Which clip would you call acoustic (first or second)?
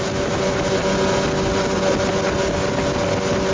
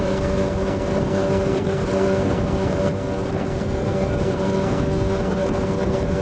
first